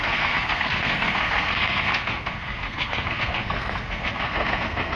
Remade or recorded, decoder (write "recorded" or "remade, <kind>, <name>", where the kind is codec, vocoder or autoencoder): remade, codec, SNAC